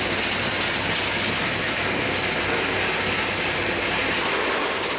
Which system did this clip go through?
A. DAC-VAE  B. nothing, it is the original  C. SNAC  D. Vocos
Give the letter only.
B